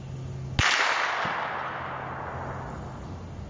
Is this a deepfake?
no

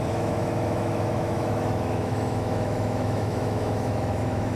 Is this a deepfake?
yes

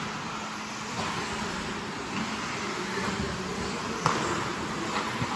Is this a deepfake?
no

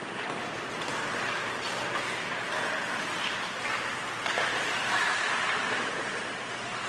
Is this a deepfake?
no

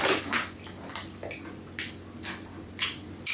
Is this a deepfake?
no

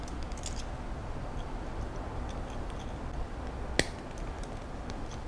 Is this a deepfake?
no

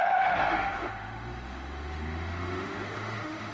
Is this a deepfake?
yes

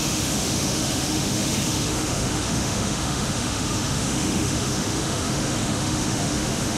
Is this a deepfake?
yes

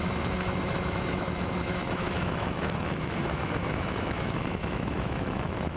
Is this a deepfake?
yes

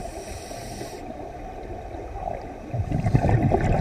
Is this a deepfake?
no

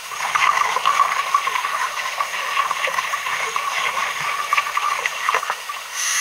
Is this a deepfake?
yes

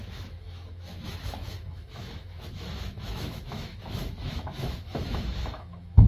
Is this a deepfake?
yes